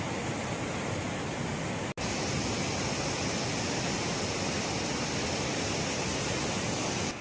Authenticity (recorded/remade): recorded